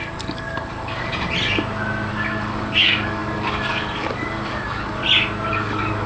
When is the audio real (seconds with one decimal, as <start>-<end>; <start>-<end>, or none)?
1.1-2.1; 5.0-5.5